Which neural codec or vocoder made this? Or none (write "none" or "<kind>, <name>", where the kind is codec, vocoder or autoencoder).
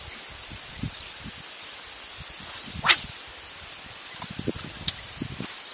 none